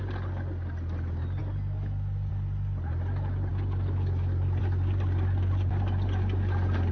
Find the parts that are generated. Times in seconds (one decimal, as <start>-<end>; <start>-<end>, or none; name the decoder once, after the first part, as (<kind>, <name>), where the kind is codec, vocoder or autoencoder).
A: none